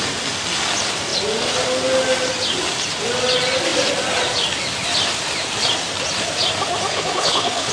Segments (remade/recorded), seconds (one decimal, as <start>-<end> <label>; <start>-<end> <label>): 0.0-6.9 recorded; 6.9-7.7 remade

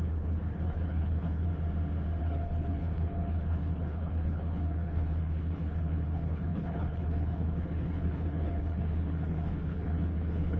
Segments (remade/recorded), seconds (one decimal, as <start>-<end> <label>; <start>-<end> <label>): 0.0-1.5 remade; 1.5-2.2 recorded; 2.2-10.6 remade

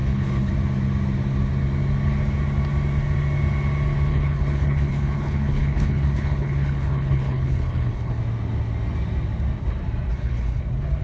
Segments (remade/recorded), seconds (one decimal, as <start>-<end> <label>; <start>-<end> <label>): 0.0-0.5 remade; 0.5-4.1 recorded; 4.1-8.2 remade; 8.2-10.1 recorded; 10.1-10.6 remade; 10.6-11.0 recorded

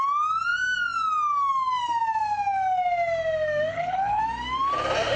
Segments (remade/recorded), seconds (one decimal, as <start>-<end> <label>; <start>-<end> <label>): 0.0-3.7 recorded; 3.7-4.2 remade; 4.2-5.2 recorded

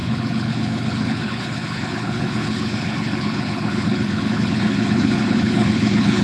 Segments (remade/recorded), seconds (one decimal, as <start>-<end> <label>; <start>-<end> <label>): 0.0-6.2 remade

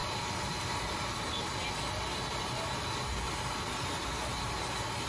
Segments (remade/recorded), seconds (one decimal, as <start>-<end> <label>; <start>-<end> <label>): 0.0-5.1 recorded